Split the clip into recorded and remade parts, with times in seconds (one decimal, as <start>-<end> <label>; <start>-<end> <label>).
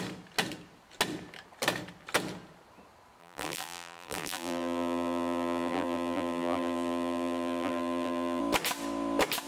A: 0.0-3.2 recorded; 3.2-8.4 remade; 8.4-9.5 recorded